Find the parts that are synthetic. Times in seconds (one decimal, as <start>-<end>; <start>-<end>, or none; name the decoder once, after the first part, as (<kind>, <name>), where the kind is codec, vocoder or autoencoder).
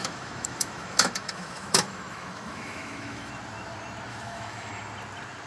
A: 0.0-3.3 (autoencoder, DAC-VAE); 4.1-4.7